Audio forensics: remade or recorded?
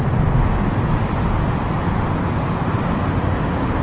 recorded